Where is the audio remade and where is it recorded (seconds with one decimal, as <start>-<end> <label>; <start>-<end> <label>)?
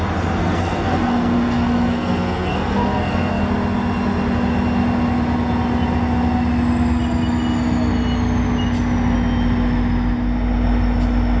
0.0-0.4 recorded; 0.4-3.4 remade; 3.4-11.4 recorded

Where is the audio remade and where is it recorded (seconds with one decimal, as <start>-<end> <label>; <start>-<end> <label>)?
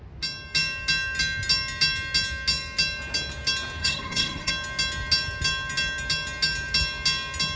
0.0-3.8 recorded; 3.8-4.5 remade; 4.5-7.6 recorded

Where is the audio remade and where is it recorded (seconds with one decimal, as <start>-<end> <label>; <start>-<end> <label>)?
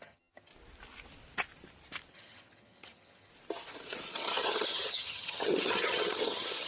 0.0-0.5 remade; 0.5-2.1 recorded; 2.1-3.3 remade; 3.3-4.1 recorded; 4.1-6.7 remade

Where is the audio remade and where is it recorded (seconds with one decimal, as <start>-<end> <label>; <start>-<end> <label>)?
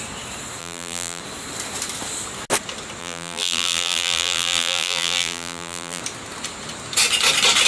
0.0-0.6 recorded; 0.6-1.2 remade; 1.2-3.0 recorded; 3.0-6.0 remade; 6.0-7.7 recorded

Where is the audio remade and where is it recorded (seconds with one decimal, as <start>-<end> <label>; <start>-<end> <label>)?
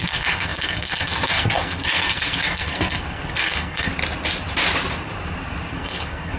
0.0-3.9 remade; 3.9-5.7 recorded; 5.7-6.4 remade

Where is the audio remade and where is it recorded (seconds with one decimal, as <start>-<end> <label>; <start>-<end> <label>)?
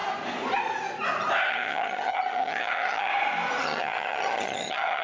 0.0-1.5 recorded; 1.5-3.1 remade; 3.1-3.6 recorded; 3.6-5.0 remade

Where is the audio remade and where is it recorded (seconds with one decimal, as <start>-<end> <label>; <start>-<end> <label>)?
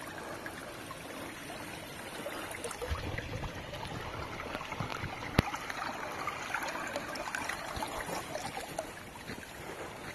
0.0-10.1 recorded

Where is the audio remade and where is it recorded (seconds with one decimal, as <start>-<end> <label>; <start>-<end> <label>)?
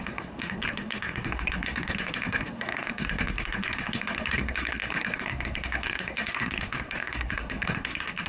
0.0-8.3 remade